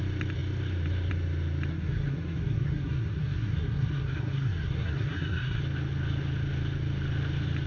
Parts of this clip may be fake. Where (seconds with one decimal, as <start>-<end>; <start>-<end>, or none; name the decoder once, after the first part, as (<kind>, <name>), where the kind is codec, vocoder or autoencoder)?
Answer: 1.7-5.6 (codec, SNAC)